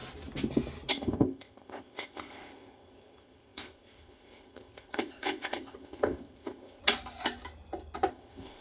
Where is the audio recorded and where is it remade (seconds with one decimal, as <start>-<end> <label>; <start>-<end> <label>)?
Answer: 0.0-0.9 recorded; 0.9-6.8 remade; 6.8-8.1 recorded; 8.1-8.6 remade